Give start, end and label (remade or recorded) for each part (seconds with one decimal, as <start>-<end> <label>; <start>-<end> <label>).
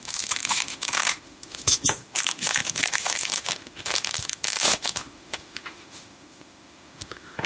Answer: 0.0-7.5 remade